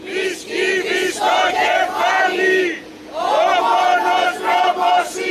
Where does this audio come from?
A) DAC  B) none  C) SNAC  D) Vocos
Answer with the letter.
D